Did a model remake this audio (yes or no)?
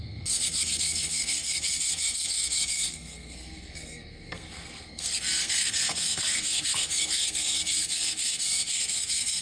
yes